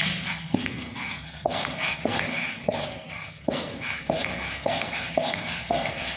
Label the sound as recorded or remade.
remade